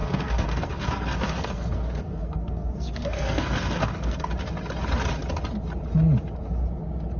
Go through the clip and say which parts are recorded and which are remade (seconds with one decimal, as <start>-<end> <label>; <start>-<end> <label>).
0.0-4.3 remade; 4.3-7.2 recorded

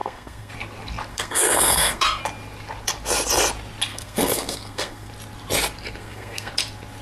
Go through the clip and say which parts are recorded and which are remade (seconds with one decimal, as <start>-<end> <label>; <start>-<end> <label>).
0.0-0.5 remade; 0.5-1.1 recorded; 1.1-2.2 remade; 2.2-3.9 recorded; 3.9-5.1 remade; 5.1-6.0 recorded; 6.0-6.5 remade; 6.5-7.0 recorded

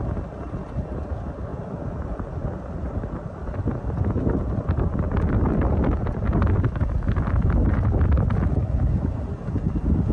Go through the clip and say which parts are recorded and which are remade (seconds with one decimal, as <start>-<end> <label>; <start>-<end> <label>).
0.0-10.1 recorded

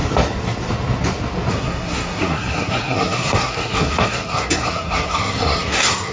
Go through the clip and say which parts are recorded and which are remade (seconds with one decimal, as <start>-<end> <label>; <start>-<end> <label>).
0.0-1.5 recorded; 1.5-6.1 remade